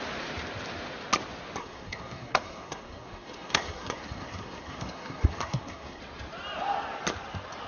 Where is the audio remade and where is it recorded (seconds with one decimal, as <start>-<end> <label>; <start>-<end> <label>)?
0.0-1.6 recorded; 1.6-6.0 remade; 6.0-7.7 recorded